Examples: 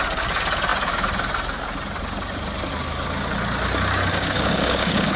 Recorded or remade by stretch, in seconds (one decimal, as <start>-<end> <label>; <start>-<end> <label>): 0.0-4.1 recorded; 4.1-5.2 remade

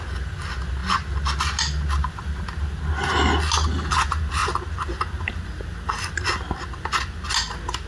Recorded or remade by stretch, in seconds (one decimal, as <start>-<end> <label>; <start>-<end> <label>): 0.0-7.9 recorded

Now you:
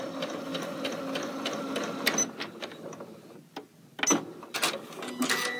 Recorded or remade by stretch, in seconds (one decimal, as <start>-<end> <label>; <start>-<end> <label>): 0.0-5.6 recorded

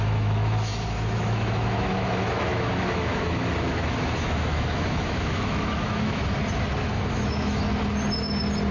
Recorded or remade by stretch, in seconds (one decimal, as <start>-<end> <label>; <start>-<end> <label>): 0.0-6.2 remade; 6.2-6.9 recorded; 6.9-7.6 remade; 7.6-8.7 recorded

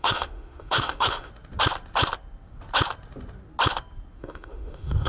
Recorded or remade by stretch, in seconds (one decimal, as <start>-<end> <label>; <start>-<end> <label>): 0.0-1.3 remade; 1.3-4.2 recorded; 4.2-5.1 remade